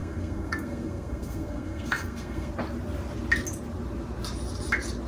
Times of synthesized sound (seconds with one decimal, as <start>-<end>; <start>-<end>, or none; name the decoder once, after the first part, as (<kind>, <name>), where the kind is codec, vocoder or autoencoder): 0.0-2.5 (codec, SNAC)